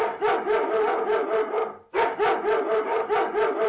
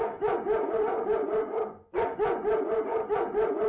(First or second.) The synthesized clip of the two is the second